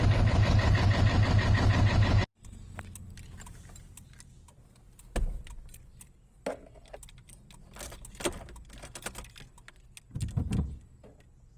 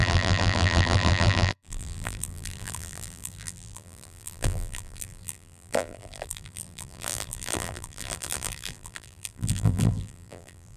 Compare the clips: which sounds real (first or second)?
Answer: first